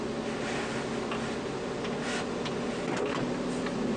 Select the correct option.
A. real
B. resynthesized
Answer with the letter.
A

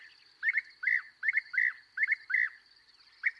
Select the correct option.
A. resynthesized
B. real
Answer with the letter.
B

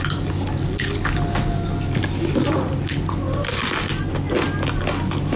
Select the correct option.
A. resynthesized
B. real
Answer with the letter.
B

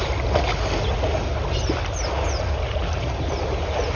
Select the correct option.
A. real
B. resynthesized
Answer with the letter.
A